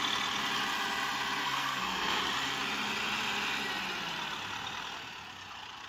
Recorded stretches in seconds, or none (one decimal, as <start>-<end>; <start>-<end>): 0.0-1.4; 2.2-5.9